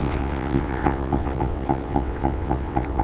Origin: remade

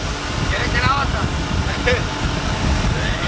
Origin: recorded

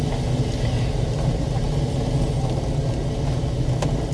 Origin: recorded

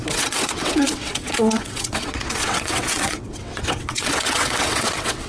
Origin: remade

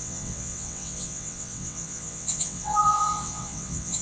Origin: remade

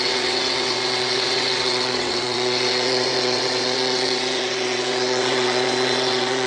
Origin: remade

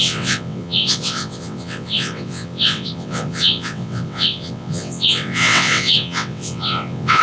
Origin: remade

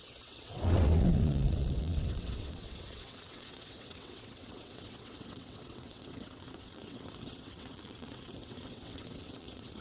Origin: remade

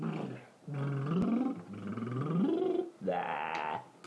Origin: recorded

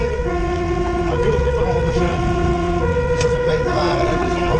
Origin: remade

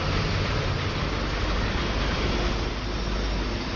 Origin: recorded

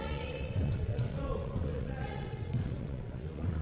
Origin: remade